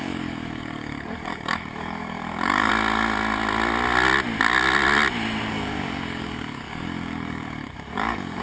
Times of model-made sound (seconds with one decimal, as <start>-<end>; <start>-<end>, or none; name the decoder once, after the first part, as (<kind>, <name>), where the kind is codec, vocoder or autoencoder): 0.0-2.7 (codec, DAC); 5.5-8.4